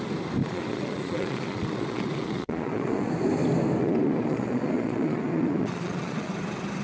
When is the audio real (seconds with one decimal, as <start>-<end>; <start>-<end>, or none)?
0.0-0.4; 3.1-3.8; 6.3-6.8